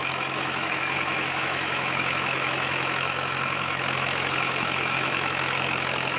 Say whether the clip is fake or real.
fake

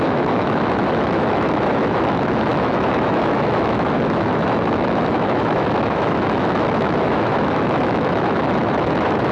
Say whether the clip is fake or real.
fake